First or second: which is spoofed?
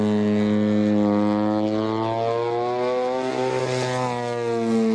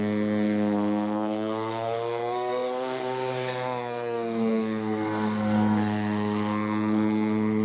second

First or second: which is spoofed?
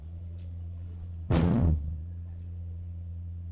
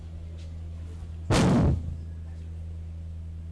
first